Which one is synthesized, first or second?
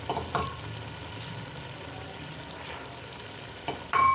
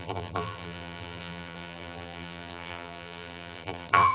second